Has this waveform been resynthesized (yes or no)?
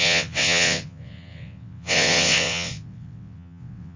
yes